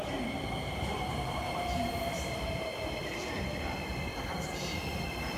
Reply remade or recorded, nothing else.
remade